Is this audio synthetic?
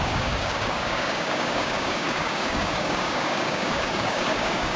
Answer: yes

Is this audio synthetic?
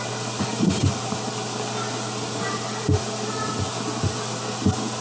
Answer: no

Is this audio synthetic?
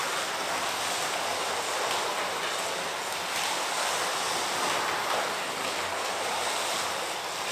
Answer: no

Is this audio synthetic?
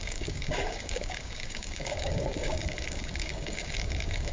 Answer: yes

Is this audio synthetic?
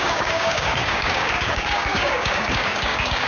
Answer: yes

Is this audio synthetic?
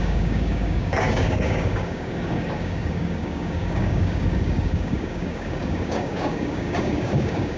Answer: yes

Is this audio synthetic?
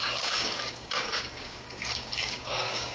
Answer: yes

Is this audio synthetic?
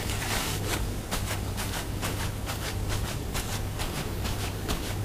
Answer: yes